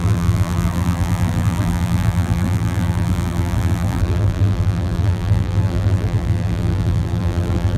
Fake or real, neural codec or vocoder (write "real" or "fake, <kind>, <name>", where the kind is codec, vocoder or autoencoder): fake, vocoder, BigVGAN v2